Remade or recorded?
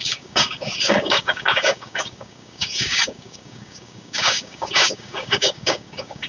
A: remade